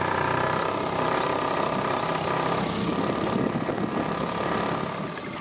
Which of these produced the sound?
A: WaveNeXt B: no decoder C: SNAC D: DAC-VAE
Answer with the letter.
B